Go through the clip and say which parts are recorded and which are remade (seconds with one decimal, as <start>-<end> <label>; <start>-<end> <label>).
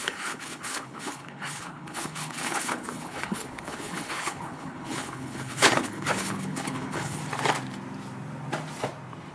0.0-7.2 remade; 7.2-9.3 recorded